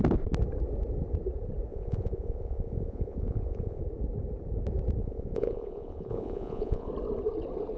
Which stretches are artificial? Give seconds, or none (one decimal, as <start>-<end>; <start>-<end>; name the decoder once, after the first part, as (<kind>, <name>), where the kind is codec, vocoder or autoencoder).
1.7-3.8 (vocoder, Vocos); 5.0-6.9